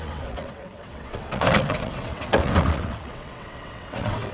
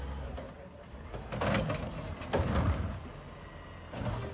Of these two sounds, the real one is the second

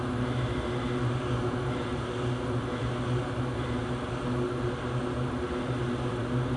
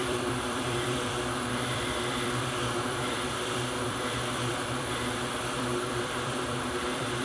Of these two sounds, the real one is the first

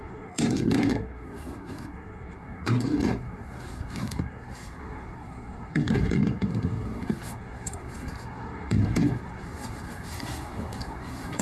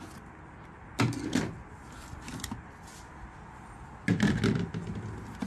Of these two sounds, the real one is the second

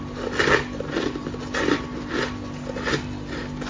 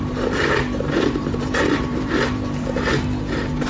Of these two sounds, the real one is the first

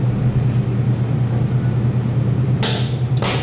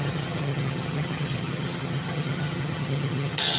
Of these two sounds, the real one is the first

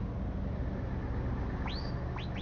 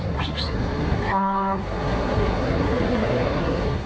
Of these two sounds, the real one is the first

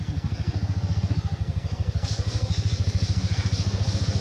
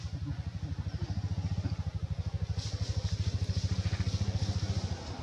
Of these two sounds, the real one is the second